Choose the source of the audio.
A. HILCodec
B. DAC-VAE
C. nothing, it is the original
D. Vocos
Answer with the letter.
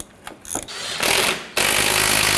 C